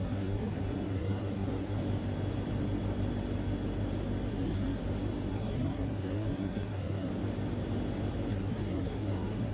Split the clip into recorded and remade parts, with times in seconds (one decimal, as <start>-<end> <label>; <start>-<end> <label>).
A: 0.0-1.8 remade; 1.8-4.3 recorded; 4.3-4.8 remade; 4.8-5.3 recorded; 5.3-7.1 remade; 7.1-8.3 recorded; 8.3-9.5 remade

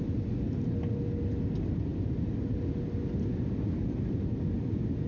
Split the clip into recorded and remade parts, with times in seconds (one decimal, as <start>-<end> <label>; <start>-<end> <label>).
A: 0.0-5.1 recorded

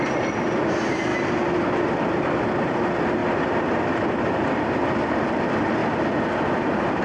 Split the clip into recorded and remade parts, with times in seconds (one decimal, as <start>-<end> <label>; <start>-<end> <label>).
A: 0.0-7.0 recorded

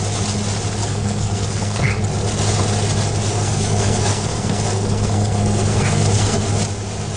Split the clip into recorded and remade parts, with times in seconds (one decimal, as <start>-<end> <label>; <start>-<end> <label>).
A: 0.0-0.8 recorded; 0.8-2.0 remade; 2.0-3.3 recorded; 3.3-6.5 remade; 6.5-7.2 recorded

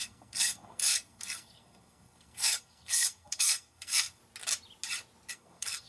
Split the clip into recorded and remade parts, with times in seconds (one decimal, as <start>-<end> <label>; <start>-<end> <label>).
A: 0.0-4.2 remade; 4.2-5.3 recorded; 5.3-5.9 remade

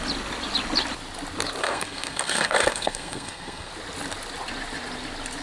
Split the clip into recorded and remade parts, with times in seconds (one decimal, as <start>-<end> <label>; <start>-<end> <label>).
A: 0.0-1.6 recorded; 1.6-3.7 remade; 3.7-5.4 recorded

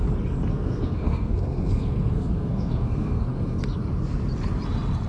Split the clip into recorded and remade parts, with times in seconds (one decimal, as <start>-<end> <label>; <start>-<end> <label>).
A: 0.0-0.5 recorded; 0.5-3.6 remade; 3.6-5.1 recorded